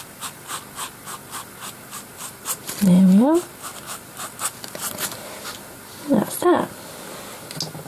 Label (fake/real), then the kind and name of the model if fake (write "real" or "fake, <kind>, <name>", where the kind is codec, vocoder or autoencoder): real